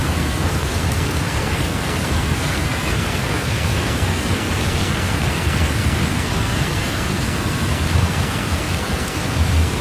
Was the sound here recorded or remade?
remade